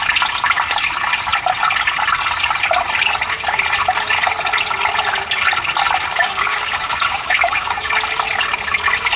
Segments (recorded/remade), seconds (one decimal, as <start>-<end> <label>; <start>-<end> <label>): 0.0-6.1 recorded; 6.1-7.9 remade; 7.9-9.2 recorded